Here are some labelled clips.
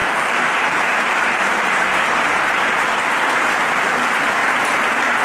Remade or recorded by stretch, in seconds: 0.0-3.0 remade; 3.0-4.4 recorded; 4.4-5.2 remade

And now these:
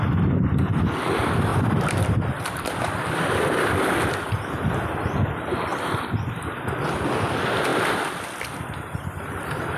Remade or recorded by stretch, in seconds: 0.0-1.5 recorded; 1.5-4.4 remade; 4.4-9.8 recorded

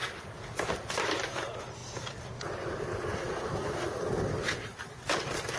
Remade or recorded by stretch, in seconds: 0.0-1.8 recorded; 1.8-2.4 remade; 2.4-3.1 recorded; 3.1-4.0 remade; 4.0-5.6 recorded

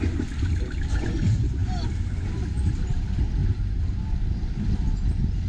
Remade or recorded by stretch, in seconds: 0.0-5.5 recorded

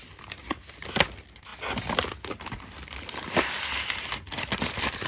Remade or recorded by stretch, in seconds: 0.0-5.1 recorded